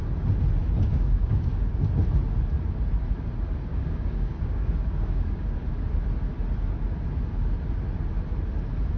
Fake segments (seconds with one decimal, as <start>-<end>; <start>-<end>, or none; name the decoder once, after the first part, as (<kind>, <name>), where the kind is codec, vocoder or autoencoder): 0.9-1.6 (codec, DAC); 3.7-5.7